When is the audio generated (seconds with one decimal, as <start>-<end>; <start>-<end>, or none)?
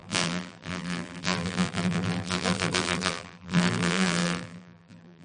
0.0-5.2